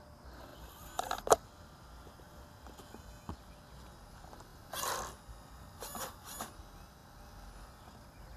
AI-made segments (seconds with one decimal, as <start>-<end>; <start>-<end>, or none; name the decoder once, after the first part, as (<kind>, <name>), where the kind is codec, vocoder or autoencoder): none